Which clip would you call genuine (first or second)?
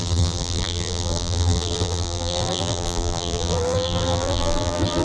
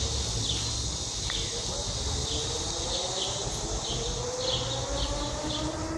second